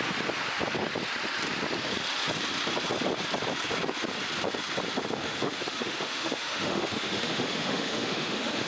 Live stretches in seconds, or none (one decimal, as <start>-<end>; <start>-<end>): 0.0-5.2